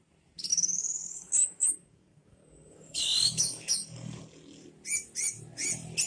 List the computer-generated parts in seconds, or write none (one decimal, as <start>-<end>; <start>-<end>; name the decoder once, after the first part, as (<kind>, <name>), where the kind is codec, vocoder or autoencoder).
0.5-4.2 (codec, DAC)